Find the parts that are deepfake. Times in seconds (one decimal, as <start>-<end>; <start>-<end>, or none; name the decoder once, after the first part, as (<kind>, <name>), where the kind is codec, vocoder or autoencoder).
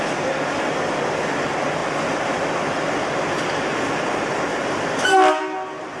none